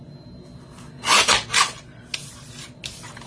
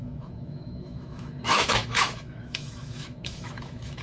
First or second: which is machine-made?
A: second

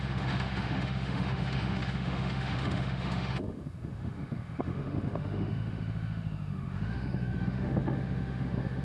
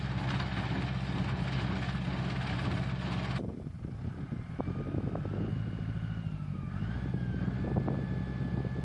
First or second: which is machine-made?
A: first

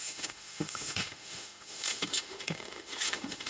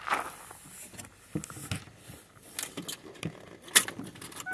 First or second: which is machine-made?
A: first